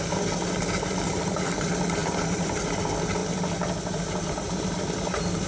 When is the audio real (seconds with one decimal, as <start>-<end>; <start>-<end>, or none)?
0.0-5.5